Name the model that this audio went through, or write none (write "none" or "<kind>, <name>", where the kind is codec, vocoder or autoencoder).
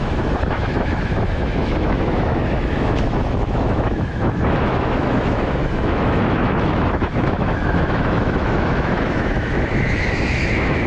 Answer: autoencoder, DAC-VAE